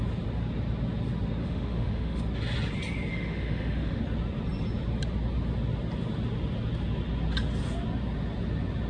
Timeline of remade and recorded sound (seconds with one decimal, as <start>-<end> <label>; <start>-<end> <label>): 0.0-1.4 recorded; 1.4-2.2 remade; 2.2-3.1 recorded; 3.1-4.0 remade; 4.0-8.9 recorded